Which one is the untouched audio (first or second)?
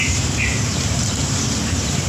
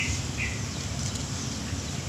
second